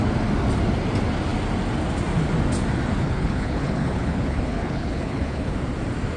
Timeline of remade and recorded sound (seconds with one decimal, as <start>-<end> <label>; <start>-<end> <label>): 0.0-2.9 recorded; 2.9-5.6 remade; 5.6-6.2 recorded